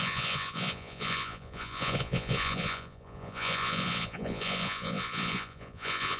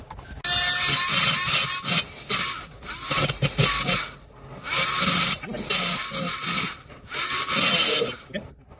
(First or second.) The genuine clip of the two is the second